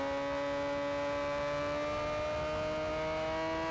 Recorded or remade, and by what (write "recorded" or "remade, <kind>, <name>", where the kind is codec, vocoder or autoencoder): recorded